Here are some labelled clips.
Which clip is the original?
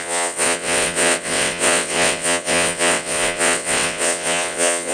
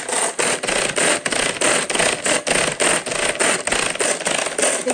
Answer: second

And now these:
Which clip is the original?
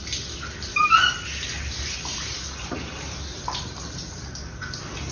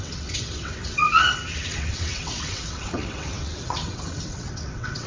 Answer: first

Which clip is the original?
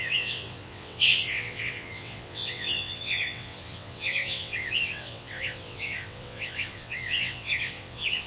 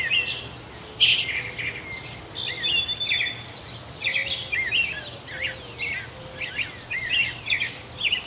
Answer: second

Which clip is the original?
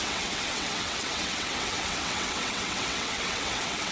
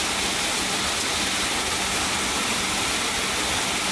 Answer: second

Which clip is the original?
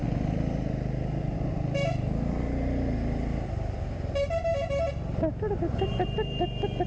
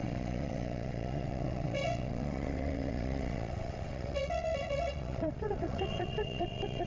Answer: first